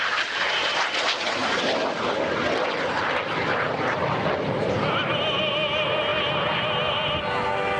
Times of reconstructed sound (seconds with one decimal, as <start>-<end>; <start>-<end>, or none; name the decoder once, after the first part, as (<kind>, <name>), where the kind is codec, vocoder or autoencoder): none